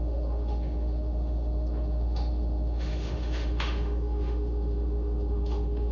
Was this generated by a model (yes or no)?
yes